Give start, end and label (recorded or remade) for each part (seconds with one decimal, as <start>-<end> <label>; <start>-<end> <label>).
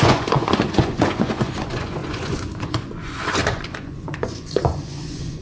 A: 0.0-5.4 remade